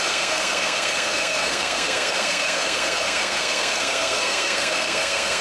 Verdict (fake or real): fake